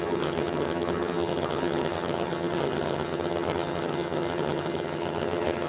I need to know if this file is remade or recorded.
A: remade